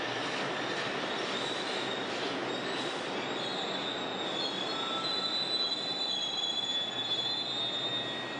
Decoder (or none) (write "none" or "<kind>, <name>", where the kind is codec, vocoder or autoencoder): none